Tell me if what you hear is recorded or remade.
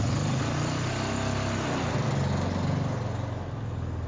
recorded